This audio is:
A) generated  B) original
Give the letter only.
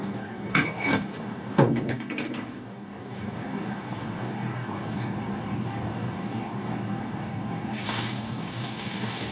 A